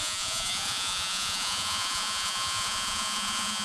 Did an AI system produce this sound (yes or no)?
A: yes